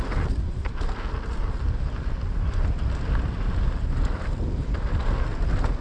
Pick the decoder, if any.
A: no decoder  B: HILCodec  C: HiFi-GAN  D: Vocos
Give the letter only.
A